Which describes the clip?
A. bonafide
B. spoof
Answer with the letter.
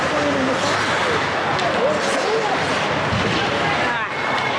A